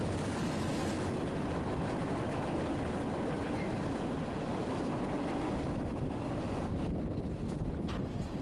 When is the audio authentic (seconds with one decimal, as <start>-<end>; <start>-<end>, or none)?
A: 0.0-8.4